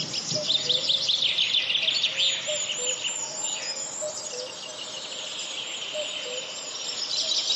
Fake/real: real